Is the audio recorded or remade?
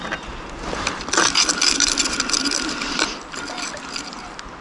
recorded